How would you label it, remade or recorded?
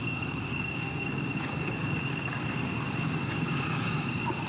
remade